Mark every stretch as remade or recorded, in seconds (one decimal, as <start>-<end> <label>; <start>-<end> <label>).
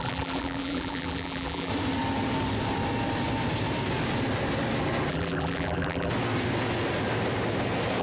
0.0-1.7 remade; 1.7-5.1 recorded; 5.1-6.1 remade; 6.1-8.0 recorded